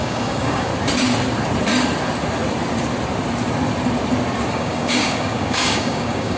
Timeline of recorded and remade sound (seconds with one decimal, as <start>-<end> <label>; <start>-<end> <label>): 0.0-0.7 remade; 0.7-4.5 recorded; 4.5-6.4 remade